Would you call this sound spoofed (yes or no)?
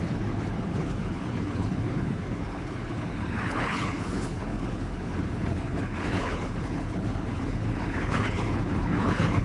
yes